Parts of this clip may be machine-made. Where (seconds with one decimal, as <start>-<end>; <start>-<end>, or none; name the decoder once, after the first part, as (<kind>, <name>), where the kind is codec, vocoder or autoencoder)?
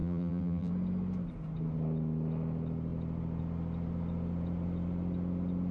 0.0-0.7 (vocoder, BigVGAN v2)